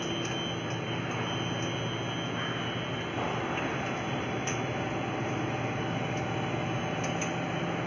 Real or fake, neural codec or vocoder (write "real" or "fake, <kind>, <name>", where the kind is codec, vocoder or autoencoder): real